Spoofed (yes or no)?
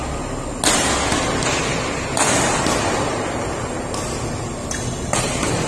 no